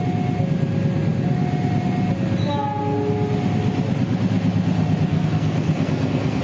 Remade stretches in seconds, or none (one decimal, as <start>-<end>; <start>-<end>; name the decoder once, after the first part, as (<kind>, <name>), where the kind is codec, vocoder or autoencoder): 5.1-6.4 (codec, SNAC)